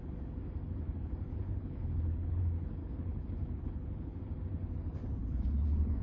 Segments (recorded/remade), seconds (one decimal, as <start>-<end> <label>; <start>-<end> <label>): 0.0-1.3 recorded; 1.3-2.4 remade; 2.4-2.8 recorded; 2.8-4.2 remade; 4.2-5.2 recorded; 5.2-6.0 remade